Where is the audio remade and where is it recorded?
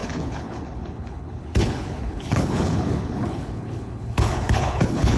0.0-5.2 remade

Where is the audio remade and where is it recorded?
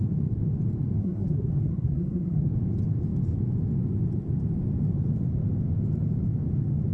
0.0-1.0 recorded; 1.0-2.5 remade; 2.5-6.9 recorded